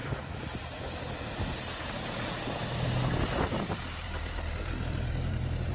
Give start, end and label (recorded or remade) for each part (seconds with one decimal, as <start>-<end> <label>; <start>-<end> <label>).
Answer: 0.0-3.2 recorded; 3.2-5.7 remade